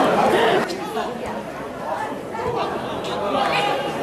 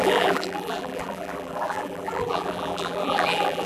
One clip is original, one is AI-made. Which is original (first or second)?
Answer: first